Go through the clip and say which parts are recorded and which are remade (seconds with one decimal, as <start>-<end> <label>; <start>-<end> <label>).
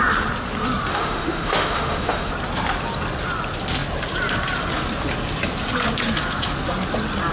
0.0-0.9 recorded; 0.9-2.3 remade; 2.3-7.3 recorded